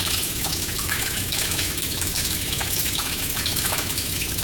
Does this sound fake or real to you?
fake